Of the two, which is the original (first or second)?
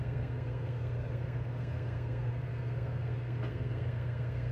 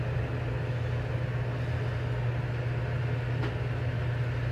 second